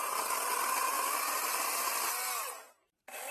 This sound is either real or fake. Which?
real